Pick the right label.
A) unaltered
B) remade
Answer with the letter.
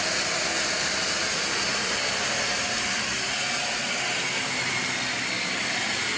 A